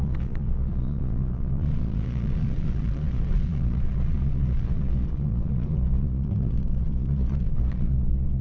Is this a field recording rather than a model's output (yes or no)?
no